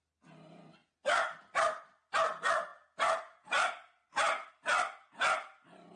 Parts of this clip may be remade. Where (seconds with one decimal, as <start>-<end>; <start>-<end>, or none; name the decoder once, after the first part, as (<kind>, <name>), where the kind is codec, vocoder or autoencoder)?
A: none